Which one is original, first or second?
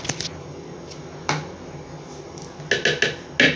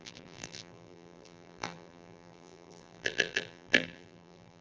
first